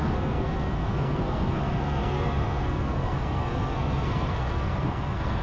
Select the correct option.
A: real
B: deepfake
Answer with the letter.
B